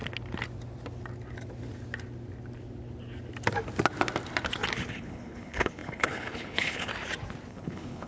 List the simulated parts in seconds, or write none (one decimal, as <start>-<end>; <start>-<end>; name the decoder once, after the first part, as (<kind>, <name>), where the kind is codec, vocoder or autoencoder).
4.9-6.9 (codec, HILCodec); 7.5-8.1